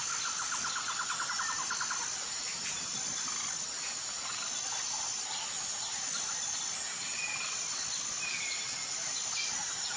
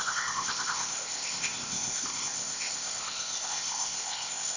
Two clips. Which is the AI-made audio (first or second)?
second